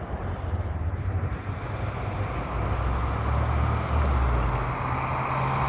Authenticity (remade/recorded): recorded